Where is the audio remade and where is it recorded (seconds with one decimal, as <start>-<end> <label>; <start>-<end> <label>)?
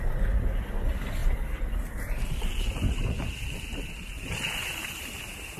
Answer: 0.0-5.6 recorded